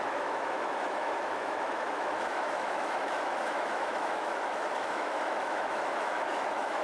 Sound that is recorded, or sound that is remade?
remade